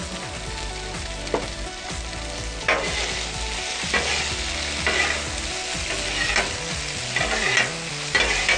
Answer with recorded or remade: recorded